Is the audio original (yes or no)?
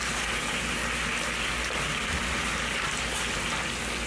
yes